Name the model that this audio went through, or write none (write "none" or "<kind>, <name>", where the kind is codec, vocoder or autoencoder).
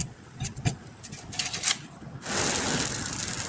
none